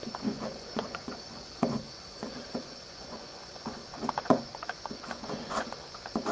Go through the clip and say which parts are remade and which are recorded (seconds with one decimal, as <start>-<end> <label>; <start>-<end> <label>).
0.0-6.3 remade